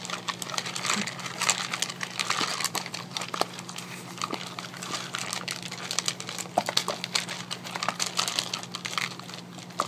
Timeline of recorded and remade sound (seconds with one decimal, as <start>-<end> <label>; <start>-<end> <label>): 0.0-2.5 recorded; 2.5-3.3 remade; 3.3-9.9 recorded